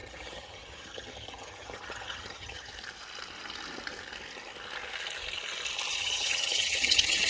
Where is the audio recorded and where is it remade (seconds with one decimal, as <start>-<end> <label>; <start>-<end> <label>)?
0.0-2.7 remade; 2.7-5.9 recorded; 5.9-7.3 remade

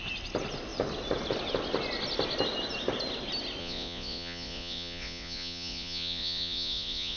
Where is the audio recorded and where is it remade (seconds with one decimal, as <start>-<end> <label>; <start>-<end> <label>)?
0.0-3.6 recorded; 3.6-7.2 remade

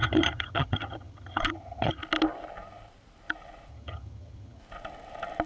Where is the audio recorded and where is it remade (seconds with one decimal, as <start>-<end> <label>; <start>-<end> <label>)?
0.0-2.0 remade; 2.0-3.7 recorded; 3.7-4.6 remade; 4.6-5.5 recorded

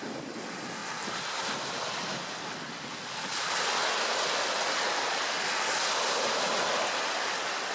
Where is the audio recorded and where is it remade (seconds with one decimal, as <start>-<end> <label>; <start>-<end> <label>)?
0.0-7.7 recorded

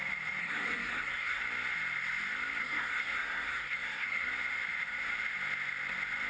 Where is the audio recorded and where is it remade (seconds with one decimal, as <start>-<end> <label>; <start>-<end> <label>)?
0.0-0.4 recorded; 0.4-1.4 remade; 1.4-2.6 recorded; 2.6-4.3 remade; 4.3-6.3 recorded

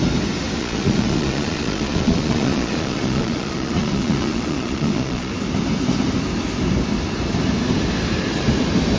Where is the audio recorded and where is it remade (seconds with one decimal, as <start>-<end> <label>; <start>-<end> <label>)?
0.0-0.6 recorded; 0.6-5.3 remade; 5.3-9.0 recorded

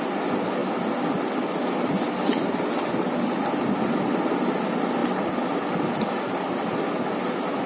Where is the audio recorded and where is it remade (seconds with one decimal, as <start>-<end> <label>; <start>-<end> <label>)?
0.0-7.7 recorded